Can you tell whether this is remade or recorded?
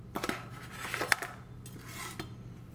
recorded